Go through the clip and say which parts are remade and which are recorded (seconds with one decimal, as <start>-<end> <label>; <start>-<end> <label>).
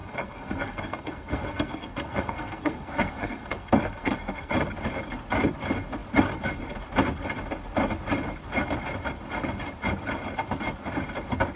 0.0-4.5 remade; 4.5-11.6 recorded